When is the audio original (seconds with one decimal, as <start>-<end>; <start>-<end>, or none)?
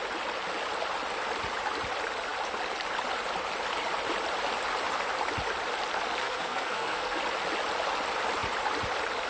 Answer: 0.0-6.2; 7.2-9.3